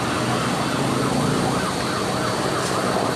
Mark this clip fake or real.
real